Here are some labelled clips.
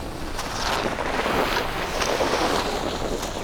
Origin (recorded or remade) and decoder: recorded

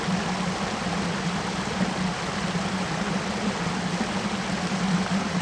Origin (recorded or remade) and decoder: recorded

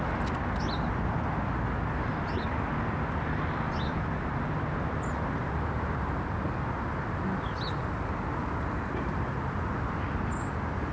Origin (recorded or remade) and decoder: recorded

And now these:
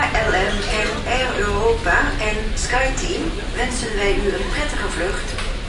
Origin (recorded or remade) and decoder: recorded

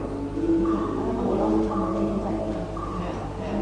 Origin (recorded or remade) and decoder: recorded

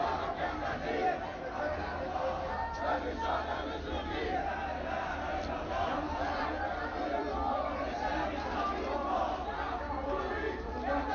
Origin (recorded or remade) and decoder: remade, vocoder, BigVGAN v2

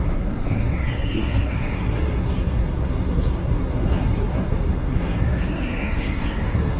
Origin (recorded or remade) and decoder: remade, codec, SNAC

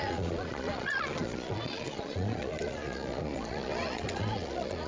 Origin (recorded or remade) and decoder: remade, vocoder, Vocos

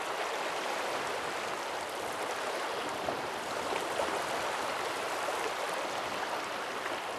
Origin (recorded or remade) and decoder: recorded